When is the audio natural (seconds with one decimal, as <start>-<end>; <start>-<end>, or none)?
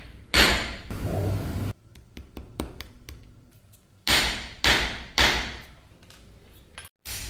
0.0-1.2; 5.6-7.3